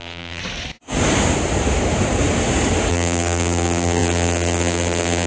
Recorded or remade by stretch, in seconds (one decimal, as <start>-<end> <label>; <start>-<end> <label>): 0.0-0.4 remade; 0.4-2.9 recorded; 2.9-5.3 remade